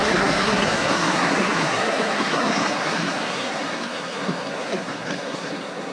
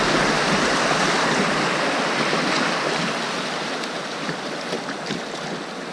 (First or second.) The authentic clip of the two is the second